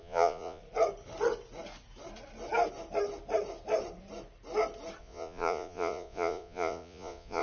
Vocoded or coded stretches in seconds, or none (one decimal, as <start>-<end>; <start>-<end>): 0.0-0.6; 5.0-7.4